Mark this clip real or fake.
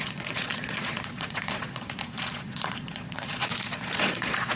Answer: fake